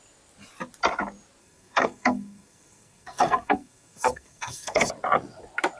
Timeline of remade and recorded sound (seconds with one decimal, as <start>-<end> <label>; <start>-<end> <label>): 0.0-1.4 recorded; 1.4-4.9 remade; 4.9-5.8 recorded